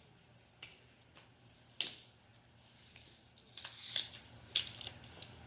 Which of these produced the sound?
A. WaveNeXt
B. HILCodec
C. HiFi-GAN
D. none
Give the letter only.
D